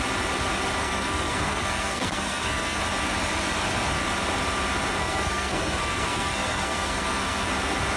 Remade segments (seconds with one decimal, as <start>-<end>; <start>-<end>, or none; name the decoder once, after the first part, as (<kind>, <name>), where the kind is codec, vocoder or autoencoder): 0.8-2.8 (codec, SNAC); 5.0-7.5